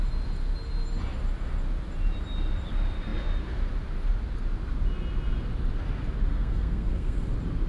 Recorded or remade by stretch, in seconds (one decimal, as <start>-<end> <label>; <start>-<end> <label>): 0.0-6.3 recorded; 6.3-7.3 remade; 7.3-7.7 recorded